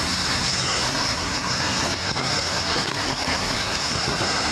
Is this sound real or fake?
fake